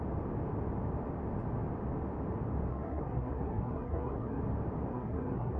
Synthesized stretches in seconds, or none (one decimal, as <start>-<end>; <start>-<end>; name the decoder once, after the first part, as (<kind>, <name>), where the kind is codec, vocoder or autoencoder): 2.7-4.4 (codec, SNAC); 4.9-5.6